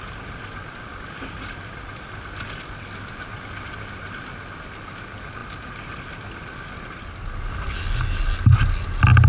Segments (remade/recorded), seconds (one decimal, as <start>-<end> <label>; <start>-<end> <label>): 0.0-9.3 recorded